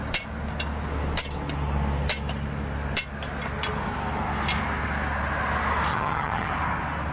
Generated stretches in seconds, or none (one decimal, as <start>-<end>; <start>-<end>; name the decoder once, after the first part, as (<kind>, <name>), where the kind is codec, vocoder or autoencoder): 5.9-6.5 (vocoder, HiFi-GAN)